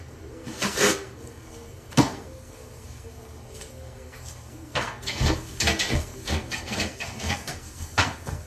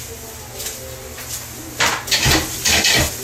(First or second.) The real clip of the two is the second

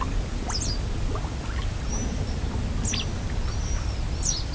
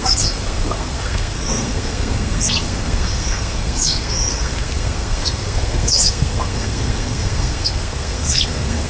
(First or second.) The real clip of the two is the first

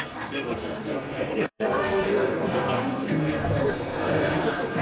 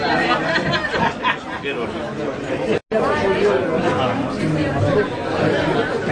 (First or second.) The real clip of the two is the second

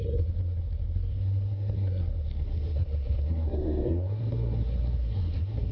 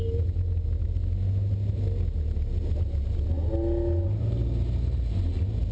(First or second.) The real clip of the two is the second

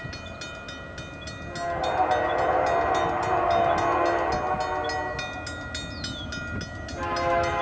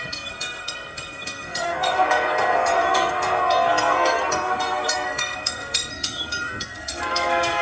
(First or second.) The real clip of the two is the first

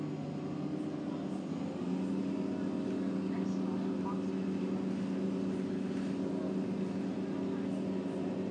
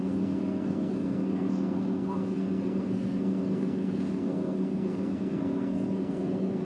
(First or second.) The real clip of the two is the first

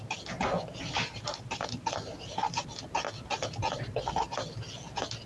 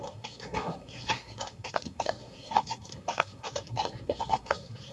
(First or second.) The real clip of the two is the first